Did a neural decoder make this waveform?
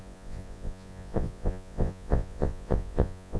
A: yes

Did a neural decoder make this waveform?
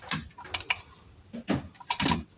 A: no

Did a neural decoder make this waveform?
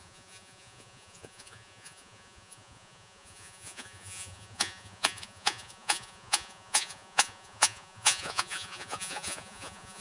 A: yes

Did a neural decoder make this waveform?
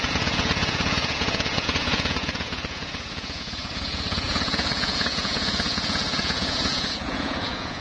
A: yes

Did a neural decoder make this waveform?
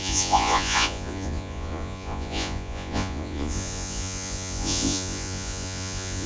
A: yes